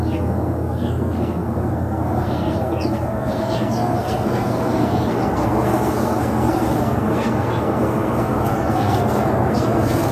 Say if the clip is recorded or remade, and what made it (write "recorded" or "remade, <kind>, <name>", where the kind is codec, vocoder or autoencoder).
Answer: remade, codec, SNAC